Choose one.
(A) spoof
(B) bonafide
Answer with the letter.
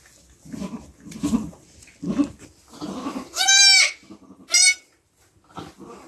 B